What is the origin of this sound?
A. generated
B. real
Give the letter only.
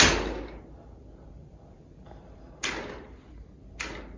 B